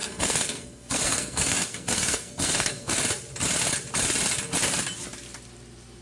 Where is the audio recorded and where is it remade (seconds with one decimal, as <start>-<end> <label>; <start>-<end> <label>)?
0.0-3.0 remade; 3.0-6.0 recorded